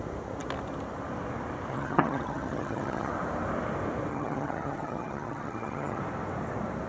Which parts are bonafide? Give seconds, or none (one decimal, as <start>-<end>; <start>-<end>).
0.0-1.7; 3.1-4.1; 6.0-6.9